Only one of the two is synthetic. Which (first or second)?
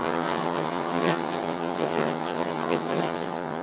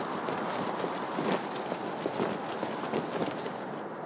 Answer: first